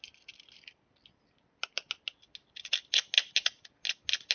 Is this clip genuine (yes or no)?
yes